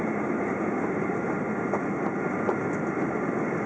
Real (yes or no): yes